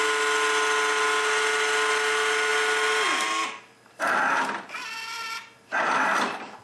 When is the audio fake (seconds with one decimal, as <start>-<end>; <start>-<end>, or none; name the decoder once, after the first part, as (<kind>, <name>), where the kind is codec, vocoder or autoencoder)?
none